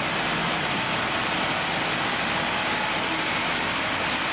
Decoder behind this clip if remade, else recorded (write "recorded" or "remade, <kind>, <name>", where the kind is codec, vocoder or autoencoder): recorded